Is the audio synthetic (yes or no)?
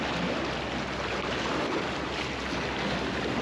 no